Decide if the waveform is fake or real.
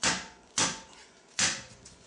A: fake